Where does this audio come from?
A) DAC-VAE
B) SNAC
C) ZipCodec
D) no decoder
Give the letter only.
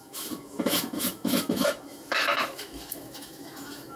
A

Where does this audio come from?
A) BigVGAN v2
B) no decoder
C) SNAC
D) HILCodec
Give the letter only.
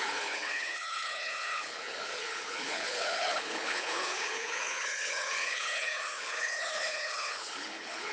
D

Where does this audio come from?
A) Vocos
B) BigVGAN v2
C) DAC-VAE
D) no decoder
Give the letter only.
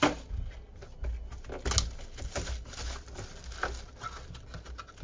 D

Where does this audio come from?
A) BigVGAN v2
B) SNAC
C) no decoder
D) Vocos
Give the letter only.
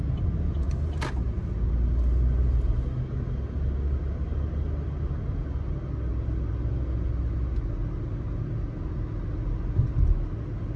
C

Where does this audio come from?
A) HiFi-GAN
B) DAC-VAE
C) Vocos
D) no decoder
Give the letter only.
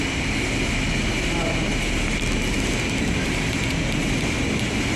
D